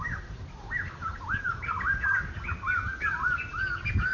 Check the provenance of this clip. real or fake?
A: real